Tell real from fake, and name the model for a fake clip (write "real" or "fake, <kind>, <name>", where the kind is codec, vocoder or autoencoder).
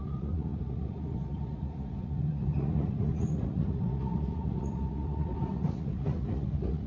fake, vocoder, Vocos